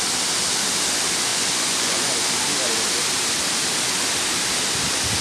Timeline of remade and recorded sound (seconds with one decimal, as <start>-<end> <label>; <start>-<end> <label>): 0.0-1.3 recorded; 1.3-2.1 remade; 2.1-5.2 recorded